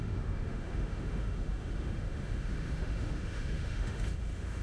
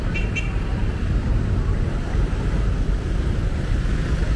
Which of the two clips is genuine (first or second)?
second